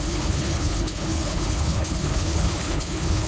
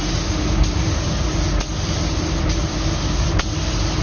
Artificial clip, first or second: first